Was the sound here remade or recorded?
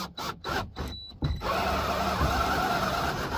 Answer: recorded